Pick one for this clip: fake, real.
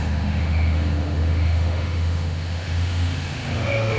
fake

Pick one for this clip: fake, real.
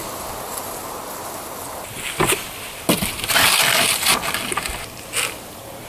real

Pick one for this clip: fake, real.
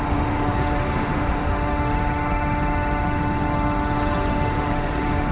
fake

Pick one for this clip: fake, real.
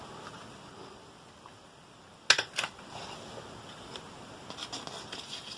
real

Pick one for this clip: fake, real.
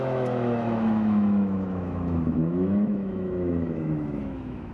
fake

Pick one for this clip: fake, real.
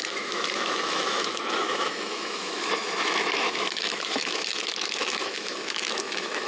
fake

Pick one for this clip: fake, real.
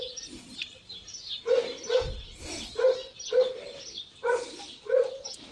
real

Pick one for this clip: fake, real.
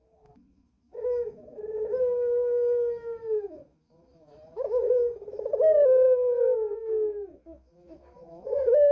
fake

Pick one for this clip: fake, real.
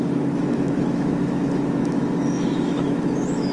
fake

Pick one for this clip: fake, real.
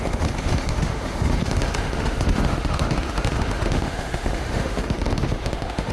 fake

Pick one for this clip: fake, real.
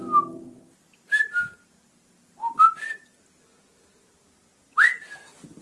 real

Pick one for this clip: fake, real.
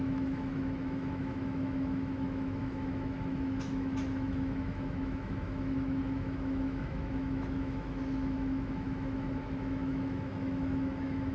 fake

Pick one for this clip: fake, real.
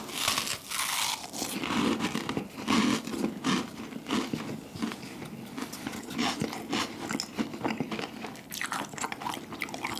real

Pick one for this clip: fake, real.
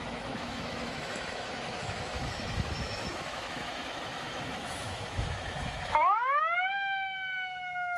fake